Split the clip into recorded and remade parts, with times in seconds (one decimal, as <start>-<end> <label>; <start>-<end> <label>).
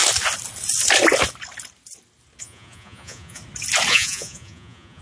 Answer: 0.0-2.4 recorded; 2.4-3.4 remade; 3.4-3.9 recorded; 3.9-5.0 remade